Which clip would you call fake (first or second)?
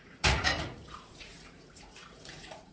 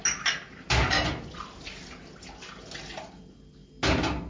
first